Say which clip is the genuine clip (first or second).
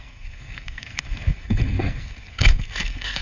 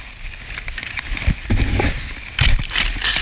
second